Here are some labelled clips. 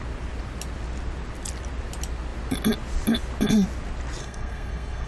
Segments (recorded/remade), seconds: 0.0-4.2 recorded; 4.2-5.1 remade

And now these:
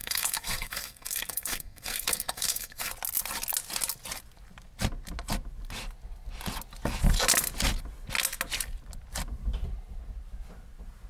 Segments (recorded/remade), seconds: 0.0-2.9 remade; 2.9-11.1 recorded

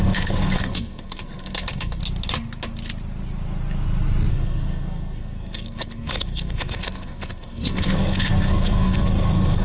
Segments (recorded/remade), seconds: 0.0-2.0 remade; 2.0-4.3 recorded; 4.3-9.6 remade

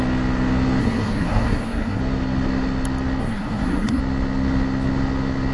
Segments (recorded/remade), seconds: 0.0-0.8 recorded; 0.8-2.0 remade; 2.0-3.2 recorded; 3.2-4.0 remade; 4.0-5.5 recorded

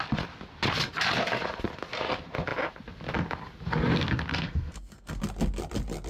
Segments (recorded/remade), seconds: 0.0-4.3 recorded; 4.3-5.2 remade; 5.2-6.1 recorded

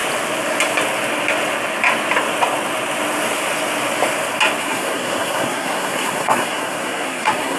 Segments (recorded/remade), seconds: 0.0-4.6 recorded; 4.6-7.6 remade

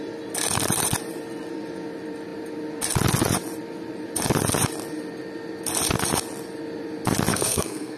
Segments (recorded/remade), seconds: 0.0-7.3 recorded; 7.3-8.0 remade